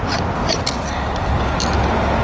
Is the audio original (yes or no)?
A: yes